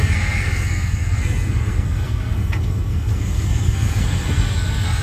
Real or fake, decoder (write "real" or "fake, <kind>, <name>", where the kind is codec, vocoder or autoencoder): fake, codec, SNAC